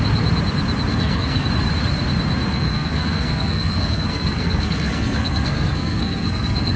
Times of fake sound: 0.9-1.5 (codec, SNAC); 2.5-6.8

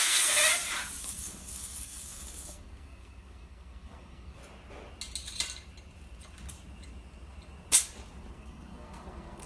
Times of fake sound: 0.0-0.4 (codec, SNAC); 1.0-4.4; 8.3-9.5

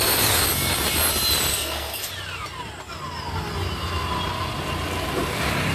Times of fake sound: 1.5-2.1 (codec, SNAC)